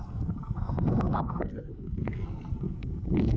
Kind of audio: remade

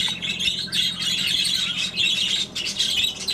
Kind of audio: recorded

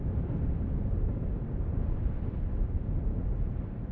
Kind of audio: recorded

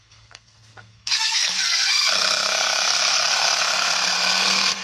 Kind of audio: remade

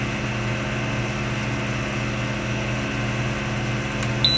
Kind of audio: recorded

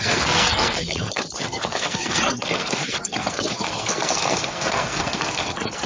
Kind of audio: remade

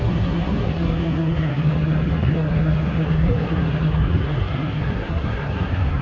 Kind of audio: remade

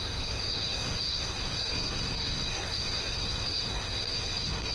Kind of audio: remade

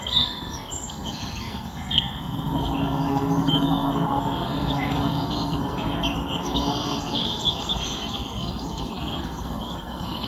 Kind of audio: remade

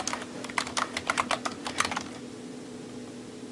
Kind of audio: recorded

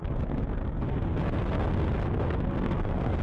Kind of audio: remade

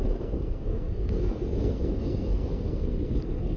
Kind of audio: remade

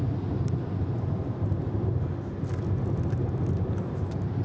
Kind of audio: recorded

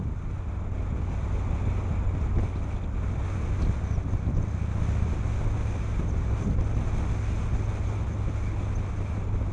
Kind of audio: recorded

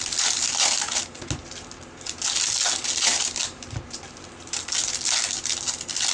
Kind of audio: recorded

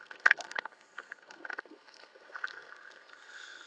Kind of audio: remade